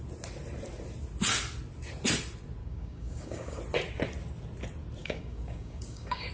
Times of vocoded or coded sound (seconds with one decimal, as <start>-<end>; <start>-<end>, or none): 2.6-3.6; 5.0-6.3